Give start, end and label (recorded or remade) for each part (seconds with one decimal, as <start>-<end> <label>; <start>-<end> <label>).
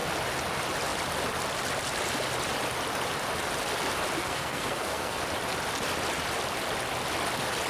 0.0-4.2 recorded; 4.2-5.2 remade; 5.2-7.7 recorded